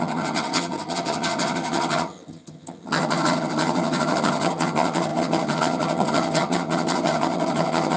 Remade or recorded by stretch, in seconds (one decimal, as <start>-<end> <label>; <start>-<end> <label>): 0.0-8.0 remade